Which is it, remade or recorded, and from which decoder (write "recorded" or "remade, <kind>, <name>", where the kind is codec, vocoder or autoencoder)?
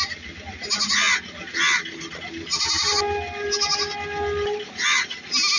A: recorded